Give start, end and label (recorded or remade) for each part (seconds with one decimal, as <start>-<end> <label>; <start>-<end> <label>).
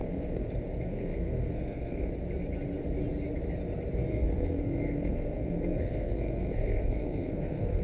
0.0-0.5 remade; 0.5-0.9 recorded; 0.9-2.1 remade; 2.1-4.1 recorded; 4.1-7.8 remade